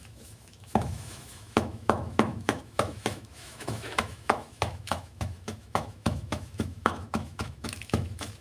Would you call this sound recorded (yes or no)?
no